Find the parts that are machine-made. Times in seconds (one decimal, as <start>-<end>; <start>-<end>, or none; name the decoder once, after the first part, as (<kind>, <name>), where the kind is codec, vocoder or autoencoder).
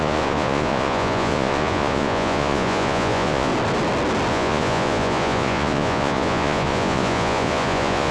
0.0-3.5 (vocoder, Vocos); 4.3-8.1